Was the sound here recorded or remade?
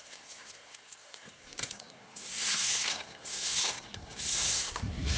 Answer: remade